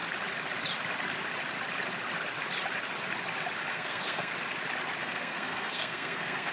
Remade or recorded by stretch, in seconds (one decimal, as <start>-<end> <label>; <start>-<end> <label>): 0.0-3.7 recorded; 3.7-4.3 remade; 4.3-5.0 recorded; 5.0-6.5 remade